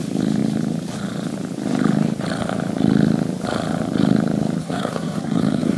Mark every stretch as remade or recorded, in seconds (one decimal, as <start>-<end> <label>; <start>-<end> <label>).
0.0-4.6 recorded; 4.6-5.8 remade

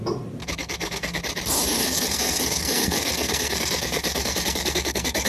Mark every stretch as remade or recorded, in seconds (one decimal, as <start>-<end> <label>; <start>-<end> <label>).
0.0-0.4 recorded; 0.4-1.2 remade; 1.2-1.8 recorded; 1.8-5.3 remade